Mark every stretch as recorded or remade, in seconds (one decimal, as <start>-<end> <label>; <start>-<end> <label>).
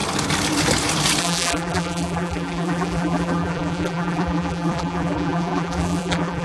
0.0-1.2 recorded; 1.2-6.4 remade